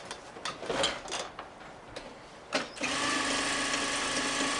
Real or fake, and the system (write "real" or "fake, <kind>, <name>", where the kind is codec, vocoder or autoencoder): real